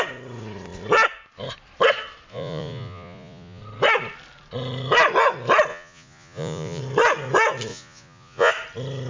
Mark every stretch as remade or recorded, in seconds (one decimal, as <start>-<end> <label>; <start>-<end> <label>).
0.0-2.3 recorded; 2.3-3.6 remade; 3.6-5.7 recorded; 5.7-6.8 remade; 6.8-7.7 recorded; 7.7-8.5 remade; 8.5-9.1 recorded